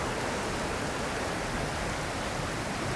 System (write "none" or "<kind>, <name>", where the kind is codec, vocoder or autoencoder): none